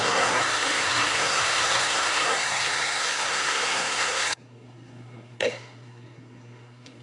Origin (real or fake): fake